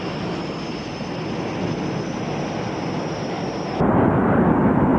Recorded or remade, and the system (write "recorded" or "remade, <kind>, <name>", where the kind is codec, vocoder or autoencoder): recorded